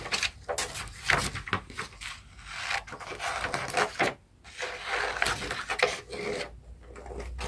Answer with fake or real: real